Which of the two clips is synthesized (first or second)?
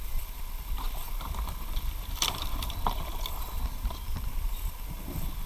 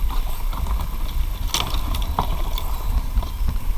first